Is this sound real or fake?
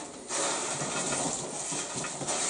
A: real